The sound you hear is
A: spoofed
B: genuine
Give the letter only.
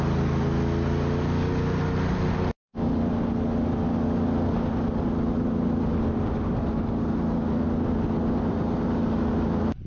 B